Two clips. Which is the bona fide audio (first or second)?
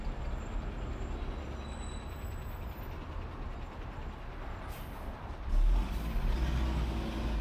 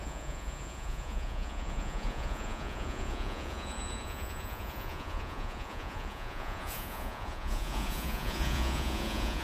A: first